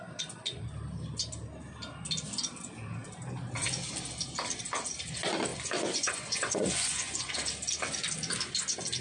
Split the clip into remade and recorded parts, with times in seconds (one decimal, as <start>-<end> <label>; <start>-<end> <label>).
0.0-5.5 recorded; 5.5-7.5 remade; 7.5-9.0 recorded